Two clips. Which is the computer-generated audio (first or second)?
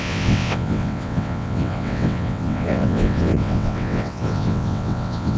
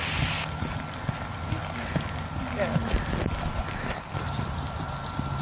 first